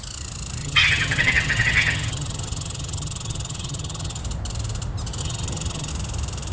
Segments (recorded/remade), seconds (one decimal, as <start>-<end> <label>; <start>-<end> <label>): 0.0-0.6 recorded; 0.6-4.2 remade; 4.2-5.2 recorded; 5.2-5.9 remade; 5.9-6.5 recorded